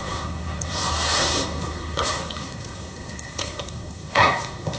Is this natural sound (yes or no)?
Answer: no